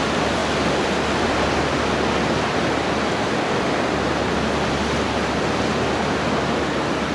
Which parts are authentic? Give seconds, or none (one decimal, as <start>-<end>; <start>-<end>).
0.0-7.1